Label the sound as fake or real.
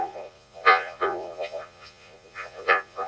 fake